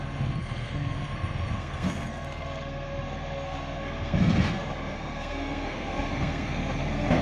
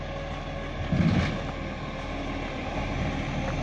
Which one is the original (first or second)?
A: second